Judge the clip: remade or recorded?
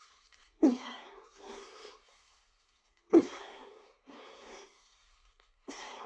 remade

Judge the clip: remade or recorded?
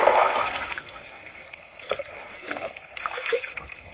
remade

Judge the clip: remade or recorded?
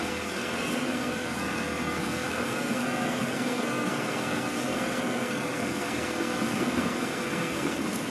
remade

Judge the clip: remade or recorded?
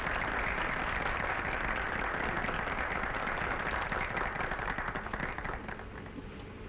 recorded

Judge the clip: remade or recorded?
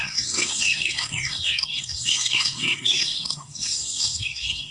remade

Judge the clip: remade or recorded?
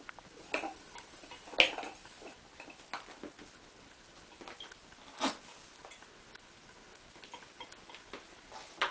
recorded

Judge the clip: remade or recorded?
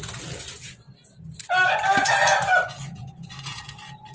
recorded